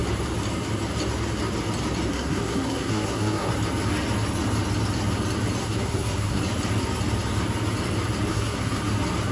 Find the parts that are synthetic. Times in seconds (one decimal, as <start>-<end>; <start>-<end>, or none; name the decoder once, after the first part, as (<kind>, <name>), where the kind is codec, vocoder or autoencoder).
2.1-3.5 (codec, SNAC); 5.6-6.4; 8.3-8.8